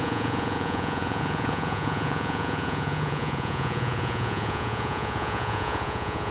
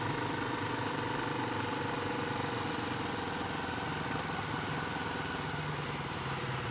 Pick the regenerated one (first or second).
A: first